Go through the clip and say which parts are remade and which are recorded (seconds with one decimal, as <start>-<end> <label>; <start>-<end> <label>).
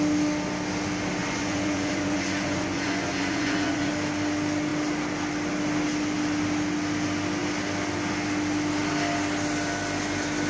0.0-1.2 recorded; 1.2-3.9 remade; 3.9-10.5 recorded